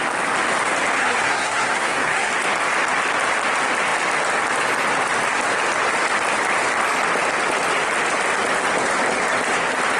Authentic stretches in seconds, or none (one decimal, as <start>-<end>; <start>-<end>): 0.0-1.0; 2.3-10.0

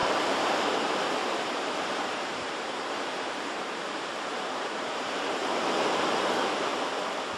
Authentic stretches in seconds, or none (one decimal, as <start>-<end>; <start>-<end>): 5.4-6.2; 6.7-7.4

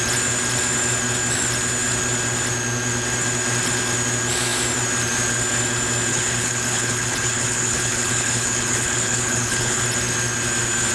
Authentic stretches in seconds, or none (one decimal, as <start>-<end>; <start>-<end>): 0.0-6.1; 9.8-10.9

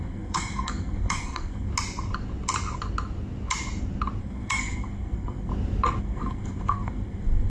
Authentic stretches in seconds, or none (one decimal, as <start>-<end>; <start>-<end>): 1.7-4.2; 5.5-6.0